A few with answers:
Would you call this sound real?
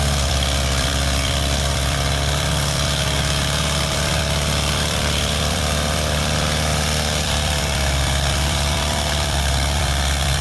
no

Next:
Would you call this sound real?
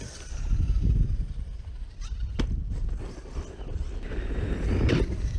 yes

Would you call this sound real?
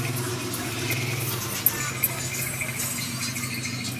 yes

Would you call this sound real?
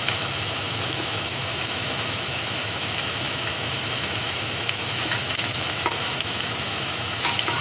no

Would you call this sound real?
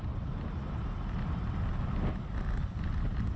yes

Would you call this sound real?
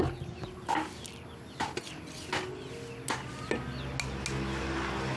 yes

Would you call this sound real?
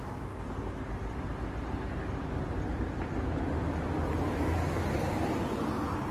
yes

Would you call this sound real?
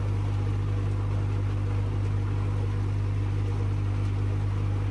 yes